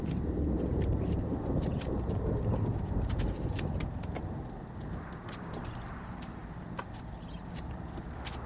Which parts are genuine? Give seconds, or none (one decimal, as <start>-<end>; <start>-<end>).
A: 6.4-7.0

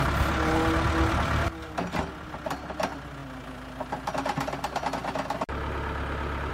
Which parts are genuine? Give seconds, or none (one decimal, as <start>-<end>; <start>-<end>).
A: 0.0-6.5

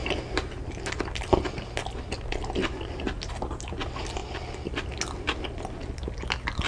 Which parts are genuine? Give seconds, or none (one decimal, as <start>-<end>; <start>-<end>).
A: 0.0-6.7

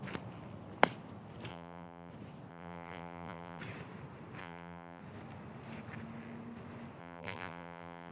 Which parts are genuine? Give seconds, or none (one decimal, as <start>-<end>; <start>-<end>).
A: 0.0-1.5; 2.1-2.5; 3.6-4.4; 5.0-7.0

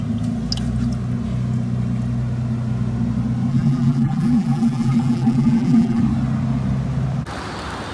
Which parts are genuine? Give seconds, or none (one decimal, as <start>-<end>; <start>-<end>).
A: 0.0-3.5; 6.0-7.9

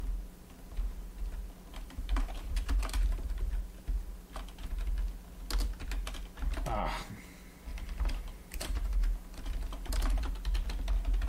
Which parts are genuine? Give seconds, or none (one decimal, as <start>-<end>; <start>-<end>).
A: 0.0-1.7; 3.5-7.7; 10.3-11.3

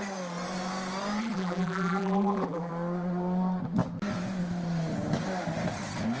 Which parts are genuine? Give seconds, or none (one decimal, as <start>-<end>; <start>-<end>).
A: 0.0-1.2; 2.7-6.2